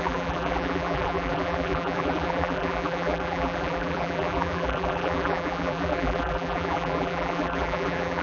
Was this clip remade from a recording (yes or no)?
yes